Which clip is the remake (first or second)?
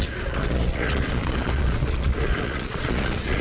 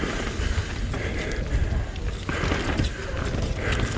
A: first